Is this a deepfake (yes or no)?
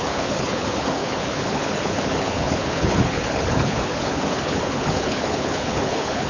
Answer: yes